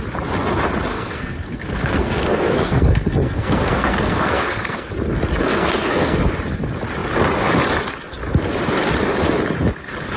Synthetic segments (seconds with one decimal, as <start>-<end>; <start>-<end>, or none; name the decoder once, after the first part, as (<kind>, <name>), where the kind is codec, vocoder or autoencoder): 0.9-4.9 (codec, SNAC); 5.4-6.2